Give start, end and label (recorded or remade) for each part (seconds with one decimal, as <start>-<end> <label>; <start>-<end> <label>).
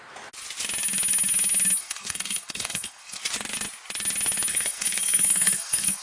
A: 0.0-1.8 recorded; 1.8-3.2 remade; 3.2-4.5 recorded; 4.5-6.0 remade